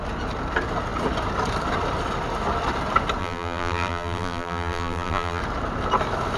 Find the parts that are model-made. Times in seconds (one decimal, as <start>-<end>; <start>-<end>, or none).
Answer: 3.2-5.4